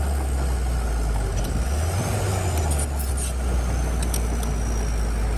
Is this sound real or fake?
real